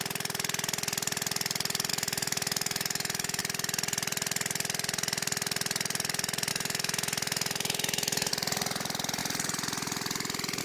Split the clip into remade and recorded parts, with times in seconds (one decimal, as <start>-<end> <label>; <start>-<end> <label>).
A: 0.0-1.9 recorded; 1.9-3.4 remade; 3.4-6.5 recorded; 6.5-8.3 remade; 8.3-10.6 recorded